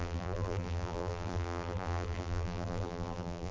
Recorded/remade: remade